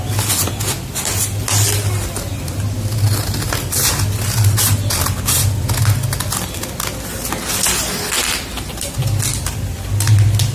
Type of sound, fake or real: real